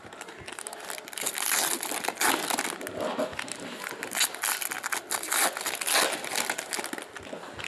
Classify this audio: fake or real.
real